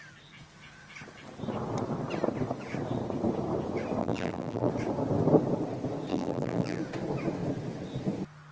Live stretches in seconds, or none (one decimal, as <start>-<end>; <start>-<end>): 0.0-4.0; 4.7-6.1; 6.8-8.5